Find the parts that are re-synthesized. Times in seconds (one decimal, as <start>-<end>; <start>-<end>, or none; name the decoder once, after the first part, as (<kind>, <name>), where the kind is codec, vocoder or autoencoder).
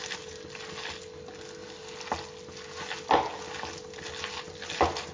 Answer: none